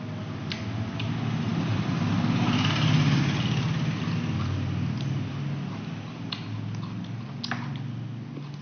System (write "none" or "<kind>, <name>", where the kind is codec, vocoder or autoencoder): none